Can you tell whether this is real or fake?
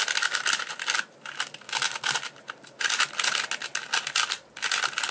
real